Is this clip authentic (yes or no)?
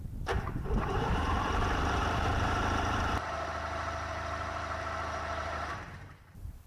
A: no